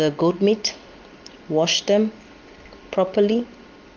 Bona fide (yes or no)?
yes